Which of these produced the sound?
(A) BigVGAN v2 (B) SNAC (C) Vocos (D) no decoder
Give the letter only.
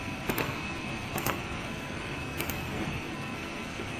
B